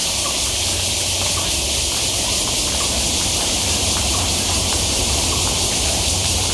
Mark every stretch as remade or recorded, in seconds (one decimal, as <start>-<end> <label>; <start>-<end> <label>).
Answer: 0.0-3.2 recorded; 3.2-6.5 remade